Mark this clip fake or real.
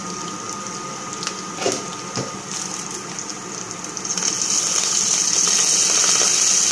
real